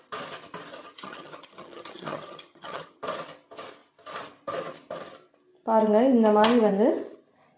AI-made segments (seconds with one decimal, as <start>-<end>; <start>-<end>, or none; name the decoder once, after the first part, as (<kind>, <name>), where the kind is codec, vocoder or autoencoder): 0.7-3.0 (vocoder, HiFi-GAN)